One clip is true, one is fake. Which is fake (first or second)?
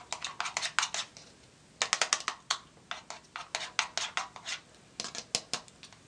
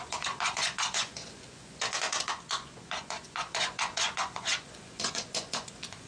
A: second